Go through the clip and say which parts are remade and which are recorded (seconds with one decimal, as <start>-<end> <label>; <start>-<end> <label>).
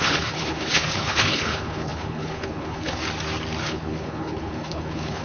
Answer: 0.0-3.0 remade; 3.0-3.6 recorded; 3.6-5.2 remade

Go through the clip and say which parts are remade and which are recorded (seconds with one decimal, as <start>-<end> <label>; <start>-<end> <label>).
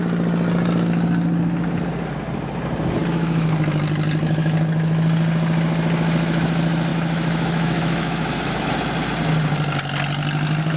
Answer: 0.0-3.0 recorded; 3.0-3.5 remade; 3.5-6.9 recorded; 6.9-8.7 remade; 8.7-10.8 recorded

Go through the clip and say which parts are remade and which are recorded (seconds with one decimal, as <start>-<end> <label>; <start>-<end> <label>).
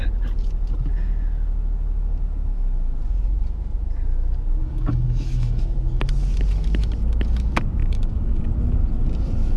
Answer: 0.0-4.6 recorded; 4.6-5.6 remade; 5.6-7.8 recorded; 7.8-8.4 remade; 8.4-9.6 recorded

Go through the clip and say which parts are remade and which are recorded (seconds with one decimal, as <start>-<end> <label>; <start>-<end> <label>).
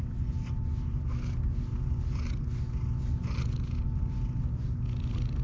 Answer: 0.0-5.4 recorded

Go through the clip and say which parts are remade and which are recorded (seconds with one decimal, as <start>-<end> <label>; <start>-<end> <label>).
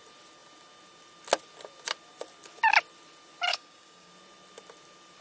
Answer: 0.0-3.5 recorded; 3.5-4.1 remade; 4.1-5.2 recorded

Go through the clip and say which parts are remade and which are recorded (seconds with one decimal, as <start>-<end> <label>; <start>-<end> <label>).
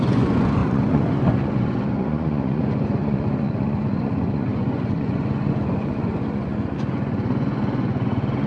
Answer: 0.0-8.5 remade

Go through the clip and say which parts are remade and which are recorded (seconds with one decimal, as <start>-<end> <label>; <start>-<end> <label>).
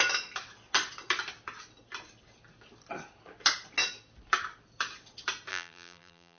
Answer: 0.0-5.5 recorded; 5.5-6.4 remade